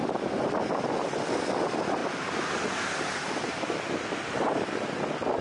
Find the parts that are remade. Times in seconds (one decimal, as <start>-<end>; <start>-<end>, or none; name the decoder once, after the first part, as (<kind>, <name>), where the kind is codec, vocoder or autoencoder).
none